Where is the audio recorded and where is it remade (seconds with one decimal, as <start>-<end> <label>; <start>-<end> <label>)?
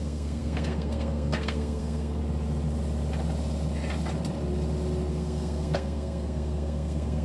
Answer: 0.0-2.2 remade; 2.2-5.1 recorded; 5.1-7.2 remade